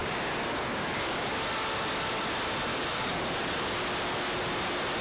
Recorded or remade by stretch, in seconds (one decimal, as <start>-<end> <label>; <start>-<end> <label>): 0.0-1.3 remade; 1.3-2.7 recorded; 2.7-3.7 remade; 3.7-5.0 recorded